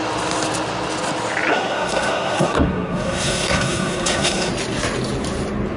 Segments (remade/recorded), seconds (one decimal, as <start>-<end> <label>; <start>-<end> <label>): 0.0-1.5 recorded; 1.5-4.5 remade; 4.5-5.8 recorded